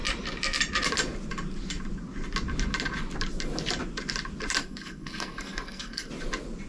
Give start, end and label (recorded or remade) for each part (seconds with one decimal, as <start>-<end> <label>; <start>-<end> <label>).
0.0-4.6 recorded; 4.6-6.1 remade; 6.1-6.7 recorded